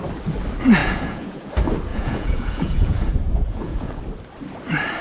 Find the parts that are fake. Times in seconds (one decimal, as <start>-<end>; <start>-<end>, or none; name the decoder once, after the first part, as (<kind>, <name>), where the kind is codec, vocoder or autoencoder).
0.8-1.5 (vocoder, Vocos); 1.9-4.0